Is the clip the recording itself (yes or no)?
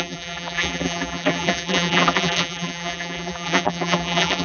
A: no